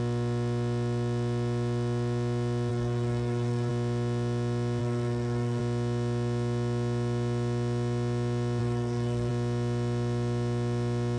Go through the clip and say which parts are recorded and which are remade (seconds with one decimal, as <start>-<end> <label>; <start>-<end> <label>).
0.0-2.7 recorded; 2.7-3.7 remade; 3.7-4.8 recorded; 4.8-5.6 remade; 5.6-8.6 recorded; 8.6-9.3 remade; 9.3-11.2 recorded